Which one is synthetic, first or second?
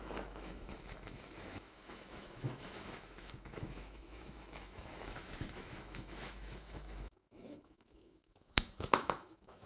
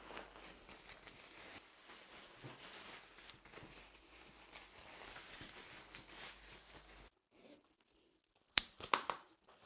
first